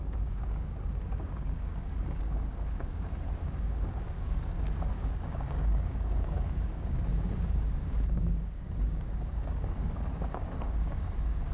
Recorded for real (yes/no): no